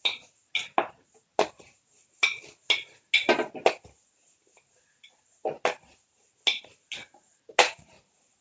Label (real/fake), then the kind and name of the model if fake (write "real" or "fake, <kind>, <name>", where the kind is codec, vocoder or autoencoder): real